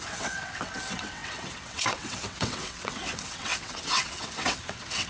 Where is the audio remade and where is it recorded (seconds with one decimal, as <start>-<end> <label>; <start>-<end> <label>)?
0.0-5.1 remade